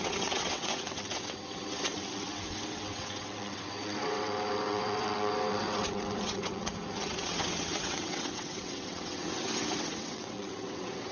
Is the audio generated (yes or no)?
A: yes